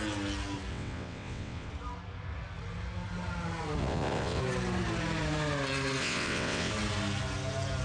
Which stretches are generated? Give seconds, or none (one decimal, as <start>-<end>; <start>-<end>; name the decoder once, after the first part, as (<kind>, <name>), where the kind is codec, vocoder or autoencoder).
0.7-1.7 (vocoder, WaveNeXt); 3.8-4.4; 6.0-6.7